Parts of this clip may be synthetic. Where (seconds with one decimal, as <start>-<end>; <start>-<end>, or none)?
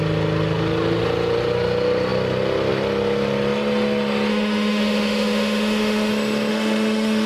4.3-6.1; 6.5-7.3